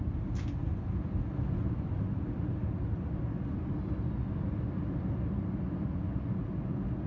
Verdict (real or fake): real